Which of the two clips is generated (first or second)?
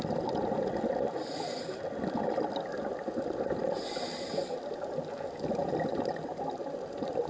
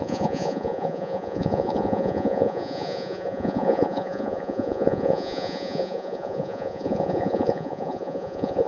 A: second